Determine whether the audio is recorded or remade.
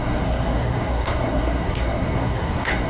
remade